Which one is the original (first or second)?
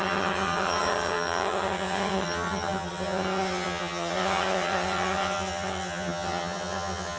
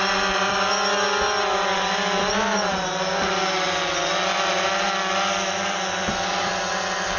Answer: second